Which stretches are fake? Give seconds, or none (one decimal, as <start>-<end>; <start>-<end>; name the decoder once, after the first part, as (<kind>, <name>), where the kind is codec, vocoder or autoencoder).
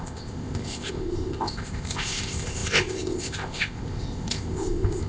0.0-5.1 (codec, ZipCodec)